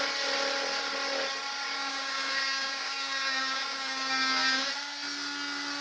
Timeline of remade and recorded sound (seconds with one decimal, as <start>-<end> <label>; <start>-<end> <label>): 0.0-1.8 recorded; 1.8-4.7 remade; 4.7-5.8 recorded

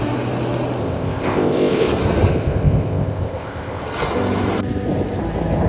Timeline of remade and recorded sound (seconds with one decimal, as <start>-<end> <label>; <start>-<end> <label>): 0.0-0.8 recorded; 0.8-1.9 remade; 1.9-2.3 recorded; 2.3-3.8 remade; 3.8-5.7 recorded

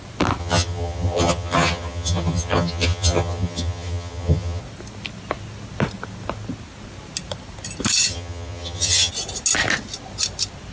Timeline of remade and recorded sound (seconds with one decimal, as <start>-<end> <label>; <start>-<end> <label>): 0.0-0.4 recorded; 0.4-4.6 remade; 4.6-8.1 recorded; 8.1-9.1 remade; 9.1-10.7 recorded

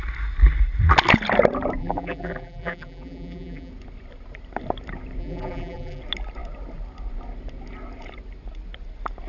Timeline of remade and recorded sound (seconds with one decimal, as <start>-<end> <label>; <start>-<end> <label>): 0.0-1.8 recorded; 1.8-3.7 remade; 3.7-5.2 recorded; 5.2-6.0 remade; 6.0-9.3 recorded

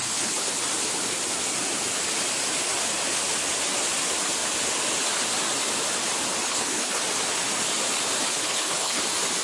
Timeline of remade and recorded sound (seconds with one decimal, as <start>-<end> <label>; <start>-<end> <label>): 0.0-0.6 remade; 0.6-6.4 recorded; 6.4-7.0 remade; 7.0-8.3 recorded; 8.3-9.0 remade; 9.0-9.4 recorded

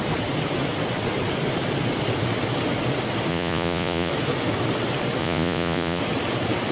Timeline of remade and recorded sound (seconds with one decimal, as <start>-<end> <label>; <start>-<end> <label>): 0.0-3.3 recorded; 3.3-4.1 remade; 4.1-5.2 recorded; 5.2-6.0 remade; 6.0-6.7 recorded

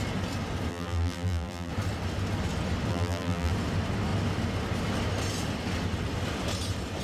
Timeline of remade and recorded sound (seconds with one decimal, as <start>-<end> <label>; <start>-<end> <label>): 0.0-0.7 recorded; 0.7-1.7 remade; 1.7-2.9 recorded; 2.9-3.5 remade; 3.5-7.0 recorded

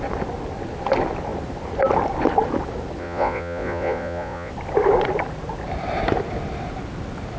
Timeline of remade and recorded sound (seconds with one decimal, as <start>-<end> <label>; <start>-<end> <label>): 0.0-3.0 recorded; 3.0-4.5 remade; 4.5-7.4 recorded